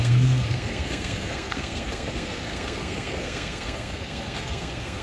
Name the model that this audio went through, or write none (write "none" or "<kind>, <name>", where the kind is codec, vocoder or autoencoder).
codec, SNAC